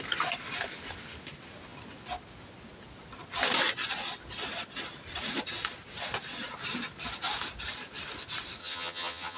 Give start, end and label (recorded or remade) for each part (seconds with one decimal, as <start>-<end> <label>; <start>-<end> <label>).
0.0-8.6 recorded; 8.6-9.4 remade